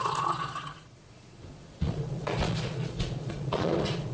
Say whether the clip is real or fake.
fake